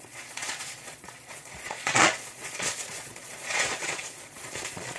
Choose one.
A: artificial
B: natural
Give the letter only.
A